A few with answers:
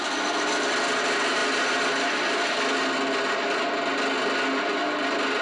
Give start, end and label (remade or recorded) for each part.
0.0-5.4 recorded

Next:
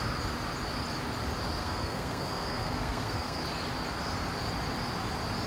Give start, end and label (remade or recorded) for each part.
0.0-1.6 recorded; 1.6-3.4 remade; 3.4-5.5 recorded

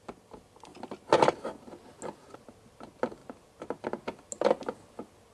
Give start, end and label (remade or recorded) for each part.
0.0-5.3 recorded

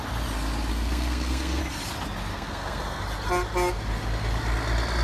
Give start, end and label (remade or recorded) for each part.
0.0-0.7 recorded; 0.7-1.6 remade; 1.6-2.3 recorded; 2.3-3.0 remade; 3.0-5.0 recorded

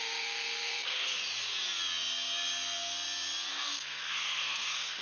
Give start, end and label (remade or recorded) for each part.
0.0-1.1 remade; 1.1-3.5 recorded; 3.5-5.0 remade

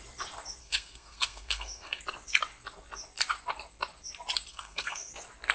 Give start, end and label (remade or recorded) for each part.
0.0-0.6 recorded; 0.6-2.0 remade; 2.0-4.5 recorded; 4.5-5.1 remade; 5.1-5.5 recorded